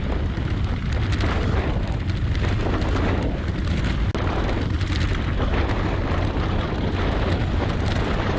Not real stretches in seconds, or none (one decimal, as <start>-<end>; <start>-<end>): none